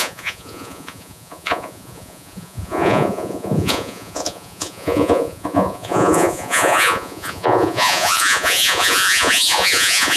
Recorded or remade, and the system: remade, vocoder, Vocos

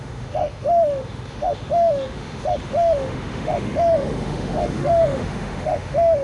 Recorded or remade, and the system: remade, autoencoder, DAC-VAE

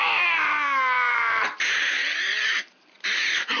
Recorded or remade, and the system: remade, vocoder, BigVGAN v2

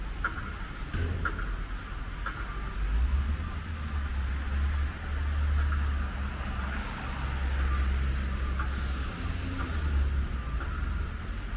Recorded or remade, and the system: recorded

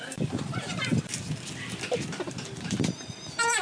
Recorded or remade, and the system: recorded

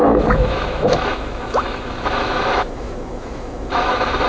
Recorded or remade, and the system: remade, autoencoder, DAC-VAE